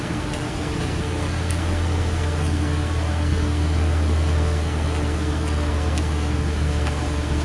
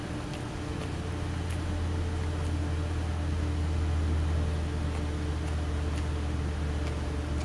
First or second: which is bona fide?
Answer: second